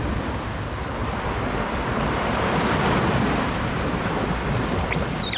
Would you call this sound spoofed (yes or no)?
no